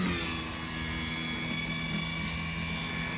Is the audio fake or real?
real